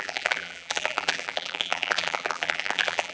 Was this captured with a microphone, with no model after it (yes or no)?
no